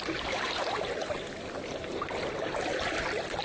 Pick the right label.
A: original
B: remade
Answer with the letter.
B